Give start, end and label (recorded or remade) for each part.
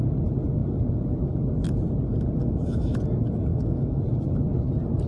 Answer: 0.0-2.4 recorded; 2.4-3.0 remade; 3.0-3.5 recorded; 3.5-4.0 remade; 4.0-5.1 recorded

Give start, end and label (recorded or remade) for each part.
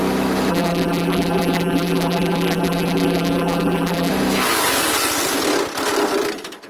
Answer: 0.0-0.5 recorded; 0.5-4.1 remade; 4.1-6.7 recorded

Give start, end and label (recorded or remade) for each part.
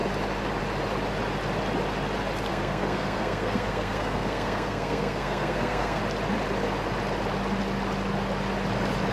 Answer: 0.0-2.5 recorded; 2.5-6.0 remade; 6.0-9.1 recorded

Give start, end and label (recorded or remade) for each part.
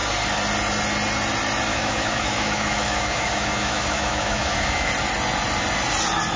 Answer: 0.0-1.7 recorded; 1.7-4.9 remade; 4.9-6.4 recorded